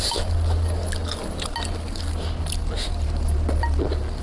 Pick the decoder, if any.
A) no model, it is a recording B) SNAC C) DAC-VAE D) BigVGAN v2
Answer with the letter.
A